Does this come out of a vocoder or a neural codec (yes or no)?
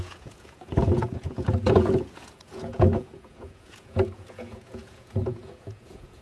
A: yes